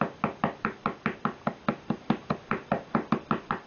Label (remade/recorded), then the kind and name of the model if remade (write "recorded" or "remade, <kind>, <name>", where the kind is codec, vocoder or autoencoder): recorded